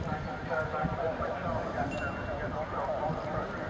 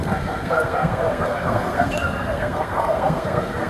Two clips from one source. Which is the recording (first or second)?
first